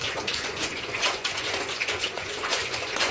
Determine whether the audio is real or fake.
fake